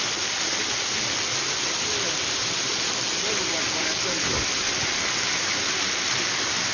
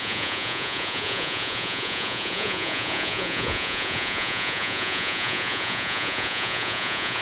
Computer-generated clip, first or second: second